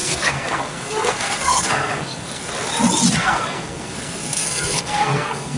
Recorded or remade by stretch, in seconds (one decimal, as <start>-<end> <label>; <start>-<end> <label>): 0.0-2.5 remade; 2.5-3.2 recorded; 3.2-5.6 remade